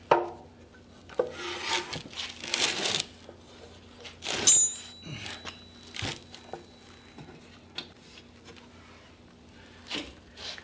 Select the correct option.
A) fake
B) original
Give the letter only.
B